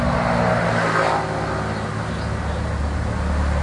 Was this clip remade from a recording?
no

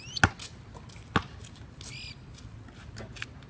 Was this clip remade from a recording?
no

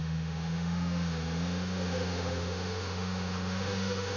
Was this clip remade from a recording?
yes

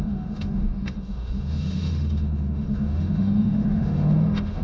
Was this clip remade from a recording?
yes